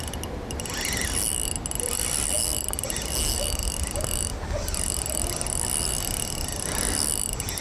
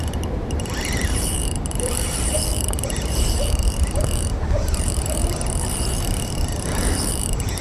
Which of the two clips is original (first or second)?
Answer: first